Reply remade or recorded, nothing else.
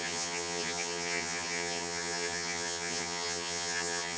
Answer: remade